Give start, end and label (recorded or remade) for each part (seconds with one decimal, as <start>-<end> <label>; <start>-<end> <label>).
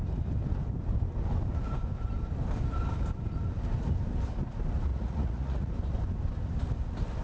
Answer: 0.0-4.9 recorded; 4.9-5.7 remade; 5.7-7.2 recorded